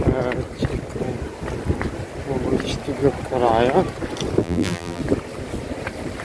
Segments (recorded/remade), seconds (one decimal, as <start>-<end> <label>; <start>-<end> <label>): 0.0-4.4 recorded; 4.4-5.0 remade; 5.0-6.2 recorded